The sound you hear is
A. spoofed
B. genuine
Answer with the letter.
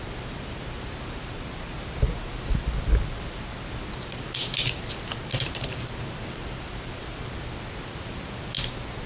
B